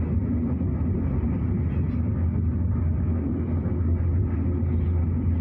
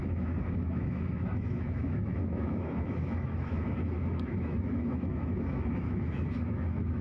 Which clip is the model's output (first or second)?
second